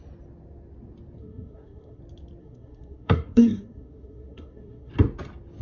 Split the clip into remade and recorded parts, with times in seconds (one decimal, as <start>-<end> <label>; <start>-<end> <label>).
0.0-1.2 recorded; 1.2-2.0 remade; 2.0-2.4 recorded; 2.4-4.9 remade; 4.9-5.6 recorded